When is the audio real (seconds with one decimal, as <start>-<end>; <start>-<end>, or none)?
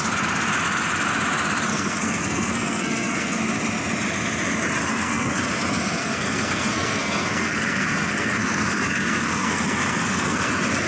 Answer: 0.0-1.7; 3.4-4.9; 5.4-6.0; 10.5-10.9